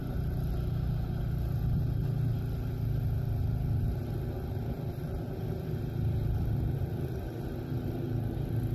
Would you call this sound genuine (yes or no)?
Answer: yes